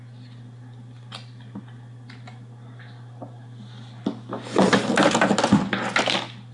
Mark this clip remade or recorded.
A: recorded